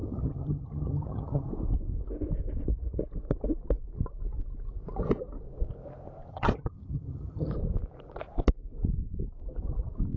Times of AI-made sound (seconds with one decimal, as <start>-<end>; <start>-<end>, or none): 0.0-1.5; 6.3-7.5